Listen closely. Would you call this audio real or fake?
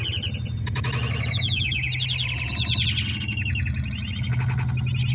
real